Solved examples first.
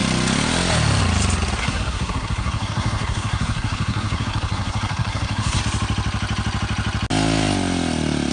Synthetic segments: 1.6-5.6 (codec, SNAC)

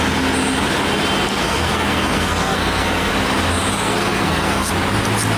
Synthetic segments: 1.4-3.1 (codec, SNAC); 3.7-4.7